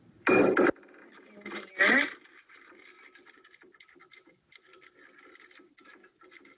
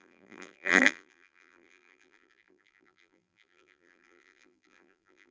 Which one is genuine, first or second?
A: first